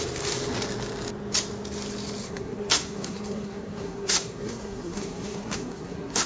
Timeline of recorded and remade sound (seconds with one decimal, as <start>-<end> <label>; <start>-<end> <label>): 0.0-2.2 recorded; 2.2-6.3 remade